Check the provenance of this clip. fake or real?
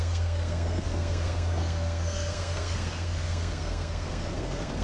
fake